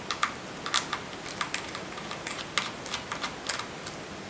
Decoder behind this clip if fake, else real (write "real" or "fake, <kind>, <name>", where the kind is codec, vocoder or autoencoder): real